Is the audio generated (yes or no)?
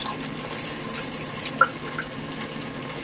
no